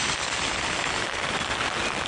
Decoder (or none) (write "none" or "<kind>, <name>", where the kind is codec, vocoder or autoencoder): none